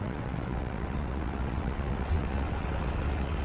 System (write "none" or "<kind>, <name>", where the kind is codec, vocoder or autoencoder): vocoder, WaveNeXt